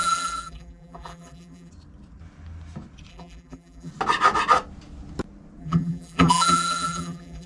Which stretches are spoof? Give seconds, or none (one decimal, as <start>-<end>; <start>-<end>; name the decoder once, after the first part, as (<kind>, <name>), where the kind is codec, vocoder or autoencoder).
0.0-1.7 (vocoder, BigVGAN v2); 3.1-3.9; 5.6-7.5

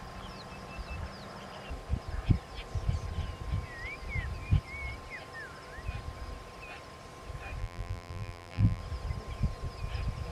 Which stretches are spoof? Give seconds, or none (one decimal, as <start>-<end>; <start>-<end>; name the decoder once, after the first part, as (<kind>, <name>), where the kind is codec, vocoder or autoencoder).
7.6-8.8 (vocoder, BigVGAN v2)

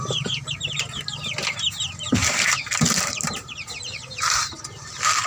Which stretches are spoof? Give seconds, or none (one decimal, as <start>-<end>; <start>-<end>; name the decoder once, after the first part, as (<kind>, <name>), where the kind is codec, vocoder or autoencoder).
2.2-5.3 (vocoder, BigVGAN v2)

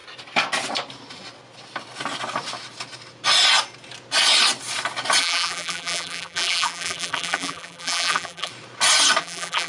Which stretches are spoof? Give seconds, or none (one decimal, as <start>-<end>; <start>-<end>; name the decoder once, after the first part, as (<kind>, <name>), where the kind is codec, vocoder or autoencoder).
5.2-8.5 (vocoder, BigVGAN v2); 9.2-9.7

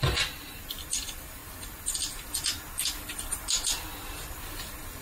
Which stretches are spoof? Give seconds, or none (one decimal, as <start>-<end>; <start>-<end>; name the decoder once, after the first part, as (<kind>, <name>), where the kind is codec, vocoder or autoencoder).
0.0-1.4 (vocoder, BigVGAN v2); 4.4-5.0

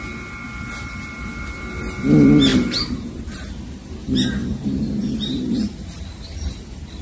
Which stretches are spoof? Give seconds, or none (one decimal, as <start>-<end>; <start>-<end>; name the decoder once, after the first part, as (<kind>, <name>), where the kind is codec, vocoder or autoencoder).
2.5-3.2 (vocoder, BigVGAN v2); 4.4-6.0

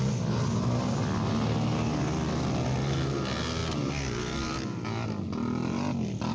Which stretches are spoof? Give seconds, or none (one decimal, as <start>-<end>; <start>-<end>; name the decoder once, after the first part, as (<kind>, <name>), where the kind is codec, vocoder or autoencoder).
none

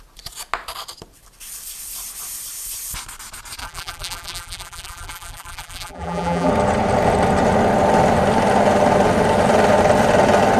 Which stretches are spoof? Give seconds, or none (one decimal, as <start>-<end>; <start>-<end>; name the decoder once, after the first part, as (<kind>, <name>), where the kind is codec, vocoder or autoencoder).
3.6-6.5 (vocoder, BigVGAN v2)